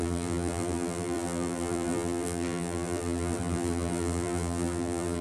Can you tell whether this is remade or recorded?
remade